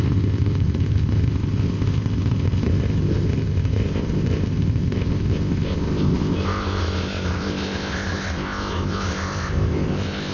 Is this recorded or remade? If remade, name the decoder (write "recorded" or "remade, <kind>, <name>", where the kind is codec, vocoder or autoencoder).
remade, codec, ZipCodec